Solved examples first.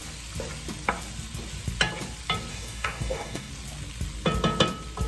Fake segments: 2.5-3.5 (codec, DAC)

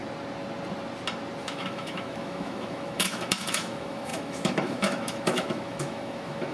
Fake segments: 1.4-6.5 (autoencoder, DAC-VAE)

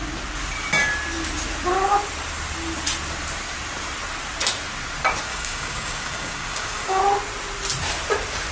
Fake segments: 5.3-7.0 (codec, DAC)

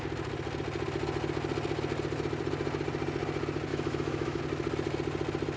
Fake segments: 3.7-4.4 (autoencoder, DAC-VAE)

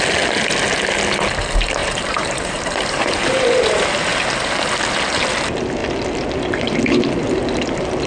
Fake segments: 1.8-3.0 (vocoder, BigVGAN v2)

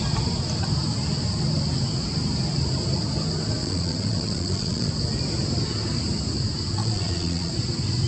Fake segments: 3.6-4.9 (vocoder, Vocos); 6.8-7.5

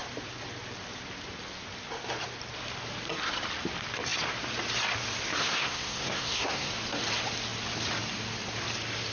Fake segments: 5.4-6.7 (codec, SNAC)